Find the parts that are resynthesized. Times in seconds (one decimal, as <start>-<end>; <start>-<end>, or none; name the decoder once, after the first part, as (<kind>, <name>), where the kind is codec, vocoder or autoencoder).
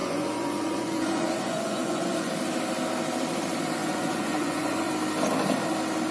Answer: 0.0-2.3 (vocoder, Vocos); 3.8-4.9